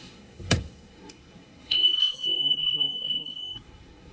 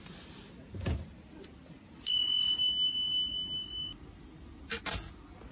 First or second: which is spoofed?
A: first